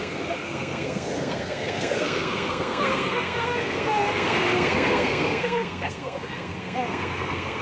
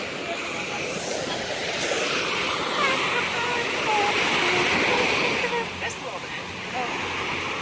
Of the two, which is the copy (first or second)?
first